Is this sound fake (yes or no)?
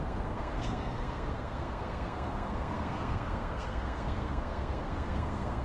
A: yes